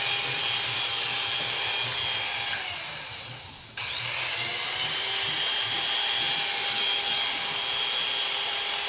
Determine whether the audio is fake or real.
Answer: real